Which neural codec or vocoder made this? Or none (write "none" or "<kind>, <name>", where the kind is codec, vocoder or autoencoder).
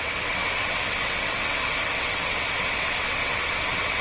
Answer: vocoder, WaveNeXt